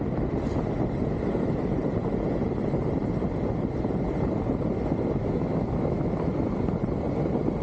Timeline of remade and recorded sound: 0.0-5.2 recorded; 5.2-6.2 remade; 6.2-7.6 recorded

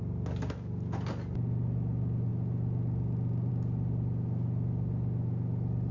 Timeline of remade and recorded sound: 0.0-5.9 recorded

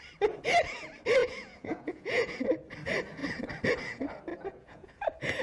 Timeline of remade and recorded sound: 0.0-1.2 recorded; 1.2-2.4 remade; 2.4-4.3 recorded; 4.3-5.0 remade; 5.0-5.4 recorded

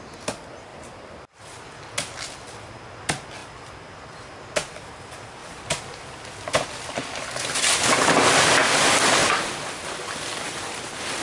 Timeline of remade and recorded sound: 0.0-0.7 recorded; 0.7-1.4 remade; 1.4-5.4 recorded; 5.4-7.9 remade; 7.9-9.2 recorded; 9.2-11.2 remade

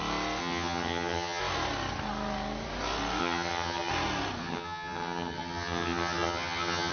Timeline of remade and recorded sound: 0.0-0.4 recorded; 0.4-1.4 remade; 1.4-3.2 recorded; 3.2-3.9 remade; 3.9-4.4 recorded; 4.4-6.9 remade

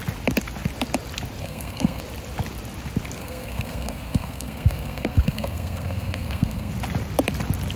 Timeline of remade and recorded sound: 0.0-1.4 recorded; 1.4-2.0 remade; 2.0-3.2 recorded; 3.2-6.7 remade; 6.7-7.8 recorded